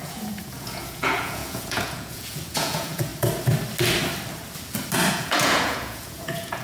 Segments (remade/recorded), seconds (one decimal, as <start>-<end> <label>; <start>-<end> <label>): 0.0-3.1 remade; 3.1-5.1 recorded; 5.1-6.6 remade